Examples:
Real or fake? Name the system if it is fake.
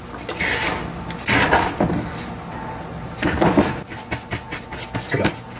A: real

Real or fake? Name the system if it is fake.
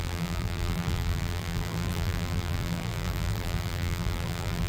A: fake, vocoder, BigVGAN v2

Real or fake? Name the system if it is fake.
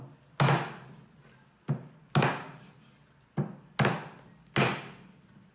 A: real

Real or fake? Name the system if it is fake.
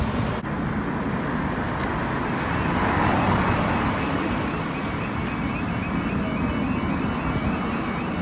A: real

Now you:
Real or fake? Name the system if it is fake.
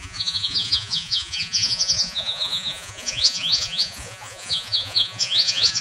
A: fake, vocoder, Vocos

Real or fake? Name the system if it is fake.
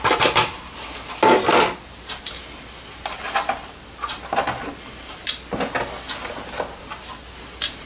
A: real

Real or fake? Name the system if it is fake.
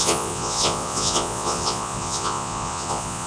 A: fake, vocoder, Vocos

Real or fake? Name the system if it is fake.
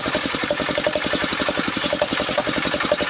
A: fake, vocoder, BigVGAN v2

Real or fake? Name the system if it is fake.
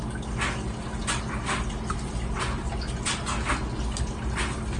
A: real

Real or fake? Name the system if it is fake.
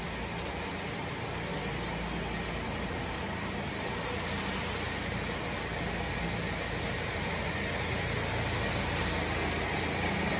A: real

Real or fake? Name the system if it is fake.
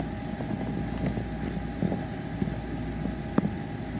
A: real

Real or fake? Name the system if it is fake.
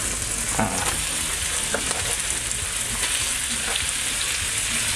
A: real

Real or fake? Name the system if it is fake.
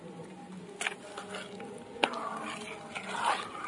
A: real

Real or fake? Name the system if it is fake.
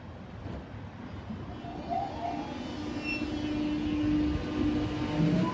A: real